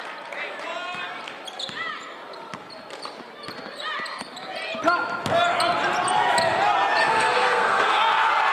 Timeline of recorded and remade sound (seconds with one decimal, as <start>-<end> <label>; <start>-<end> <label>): 0.0-7.0 recorded; 7.0-8.0 remade; 8.0-8.5 recorded